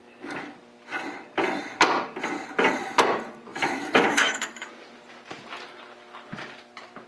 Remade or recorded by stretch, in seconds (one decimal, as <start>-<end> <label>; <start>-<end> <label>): 0.0-3.5 recorded; 3.5-4.7 remade; 4.7-7.1 recorded